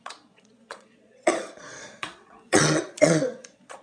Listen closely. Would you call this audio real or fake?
fake